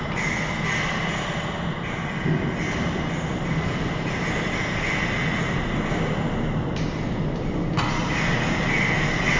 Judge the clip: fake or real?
real